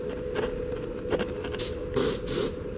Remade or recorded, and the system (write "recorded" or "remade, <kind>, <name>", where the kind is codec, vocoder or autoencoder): recorded